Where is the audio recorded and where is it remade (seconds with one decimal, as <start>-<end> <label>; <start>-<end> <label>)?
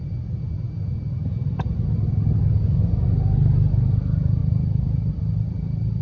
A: 0.0-6.0 recorded